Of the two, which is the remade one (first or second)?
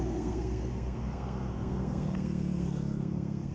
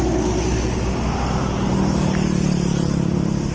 first